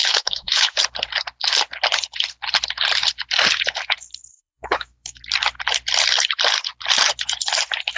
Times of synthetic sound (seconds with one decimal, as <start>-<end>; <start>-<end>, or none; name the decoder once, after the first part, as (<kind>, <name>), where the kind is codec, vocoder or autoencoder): 0.0-0.8 (autoencoder, DAC-VAE); 4.3-5.2